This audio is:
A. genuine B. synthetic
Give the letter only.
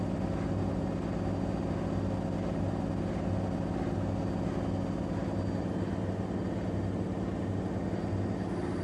A